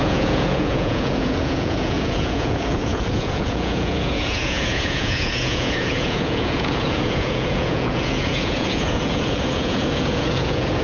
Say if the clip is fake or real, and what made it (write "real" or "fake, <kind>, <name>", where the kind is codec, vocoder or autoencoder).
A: fake, vocoder, Vocos